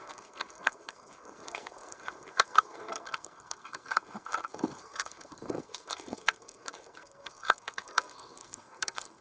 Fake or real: fake